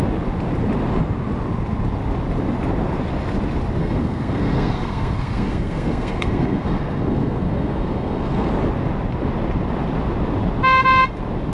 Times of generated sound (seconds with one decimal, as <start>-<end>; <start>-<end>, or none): 3.8-8.5